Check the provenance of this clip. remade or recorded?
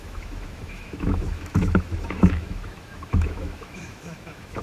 remade